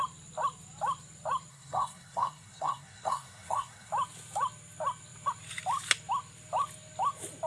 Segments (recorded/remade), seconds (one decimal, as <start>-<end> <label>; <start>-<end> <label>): 0.0-1.5 recorded; 1.5-3.9 remade; 3.9-7.5 recorded